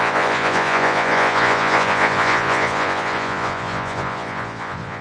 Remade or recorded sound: remade